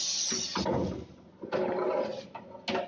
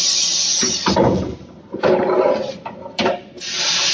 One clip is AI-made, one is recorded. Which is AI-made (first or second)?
second